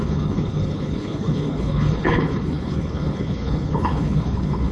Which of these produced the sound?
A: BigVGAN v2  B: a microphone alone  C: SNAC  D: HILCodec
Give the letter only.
D